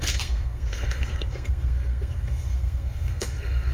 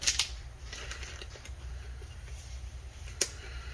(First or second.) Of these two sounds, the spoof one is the first